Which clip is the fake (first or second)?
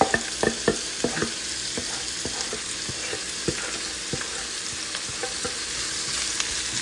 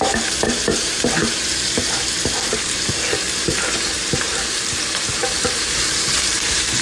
second